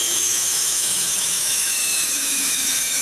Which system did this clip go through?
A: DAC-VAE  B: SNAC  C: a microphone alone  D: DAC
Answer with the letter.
A